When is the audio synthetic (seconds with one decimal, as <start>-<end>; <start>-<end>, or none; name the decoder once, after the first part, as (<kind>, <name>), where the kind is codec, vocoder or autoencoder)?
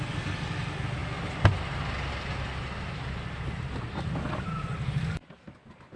none